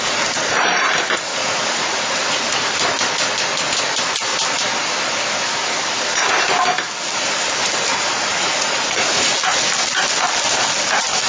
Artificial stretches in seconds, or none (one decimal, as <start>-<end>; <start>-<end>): 1.3-2.4; 7.9-9.3